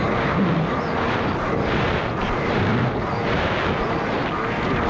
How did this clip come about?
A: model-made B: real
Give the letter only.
B